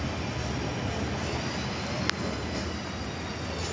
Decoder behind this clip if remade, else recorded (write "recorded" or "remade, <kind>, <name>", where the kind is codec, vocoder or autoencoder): recorded